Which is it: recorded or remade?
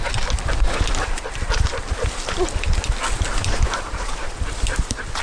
recorded